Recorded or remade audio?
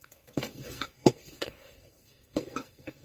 remade